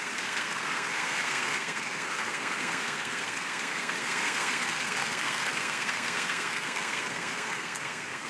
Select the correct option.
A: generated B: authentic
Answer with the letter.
A